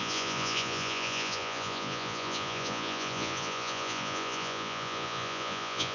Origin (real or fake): fake